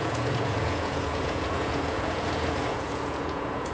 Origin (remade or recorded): remade